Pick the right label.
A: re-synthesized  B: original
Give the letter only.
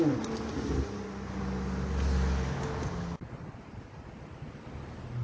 B